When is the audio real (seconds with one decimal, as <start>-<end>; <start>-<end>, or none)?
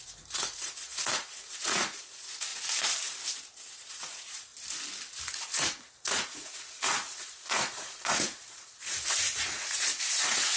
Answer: 2.5-3.9; 4.5-5.3